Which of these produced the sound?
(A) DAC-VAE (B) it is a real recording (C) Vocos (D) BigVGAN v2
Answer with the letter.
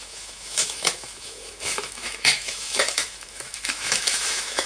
A